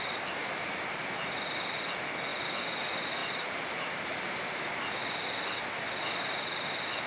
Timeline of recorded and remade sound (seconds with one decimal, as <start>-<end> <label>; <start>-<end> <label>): 0.0-0.4 recorded; 0.4-1.0 remade; 1.0-3.2 recorded; 3.2-4.8 remade; 4.8-7.1 recorded